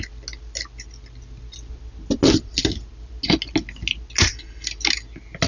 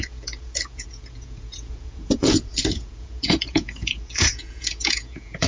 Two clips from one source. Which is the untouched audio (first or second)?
first